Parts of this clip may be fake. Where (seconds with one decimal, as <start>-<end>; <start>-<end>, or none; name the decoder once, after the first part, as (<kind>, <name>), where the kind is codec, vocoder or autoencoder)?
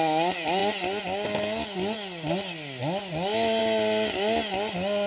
none